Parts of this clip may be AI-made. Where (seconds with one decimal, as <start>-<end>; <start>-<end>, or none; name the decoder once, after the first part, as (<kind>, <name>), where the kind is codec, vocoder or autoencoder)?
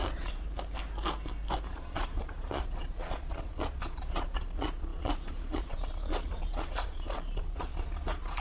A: 0.0-0.4 (vocoder, Vocos); 1.7-8.4